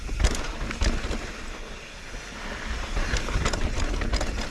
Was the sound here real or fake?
real